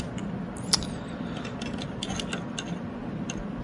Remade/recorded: recorded